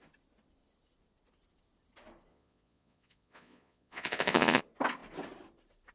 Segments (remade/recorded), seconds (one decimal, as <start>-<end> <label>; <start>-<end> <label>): 0.0-2.3 recorded; 2.3-4.6 remade; 4.6-5.9 recorded